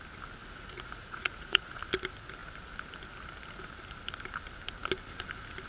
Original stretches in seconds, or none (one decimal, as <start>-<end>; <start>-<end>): 0.0-0.4; 1.8-5.7